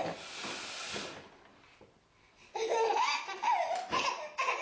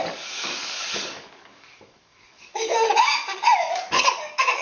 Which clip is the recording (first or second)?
first